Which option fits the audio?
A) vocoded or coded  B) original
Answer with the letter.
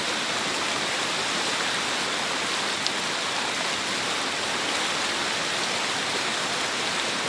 B